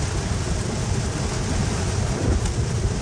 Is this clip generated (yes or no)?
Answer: no